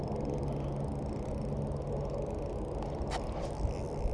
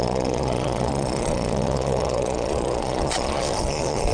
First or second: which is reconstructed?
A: second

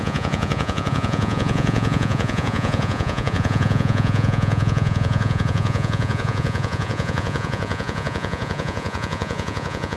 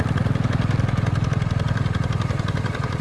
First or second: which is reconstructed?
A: first